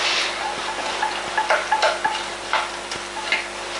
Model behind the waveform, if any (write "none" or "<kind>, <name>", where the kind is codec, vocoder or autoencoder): none